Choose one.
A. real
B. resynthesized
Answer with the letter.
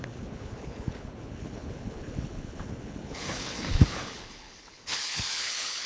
B